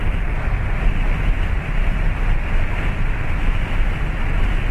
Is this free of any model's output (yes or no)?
yes